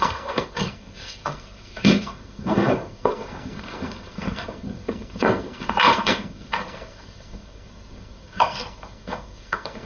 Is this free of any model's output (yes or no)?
no